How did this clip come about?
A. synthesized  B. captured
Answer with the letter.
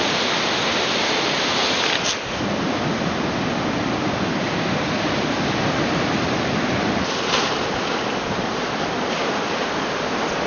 B